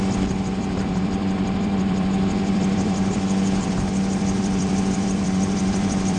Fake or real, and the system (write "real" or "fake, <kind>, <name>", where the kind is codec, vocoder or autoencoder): fake, vocoder, BigVGAN v2